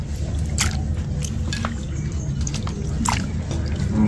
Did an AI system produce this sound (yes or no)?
no